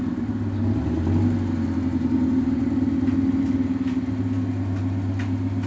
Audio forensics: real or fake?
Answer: real